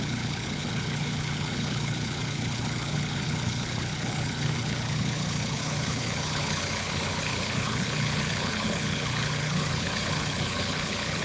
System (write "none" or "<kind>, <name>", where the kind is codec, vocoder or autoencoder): codec, HILCodec